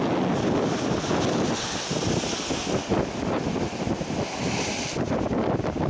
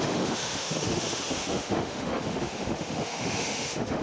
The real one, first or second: first